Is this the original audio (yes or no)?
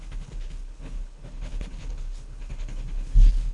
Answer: no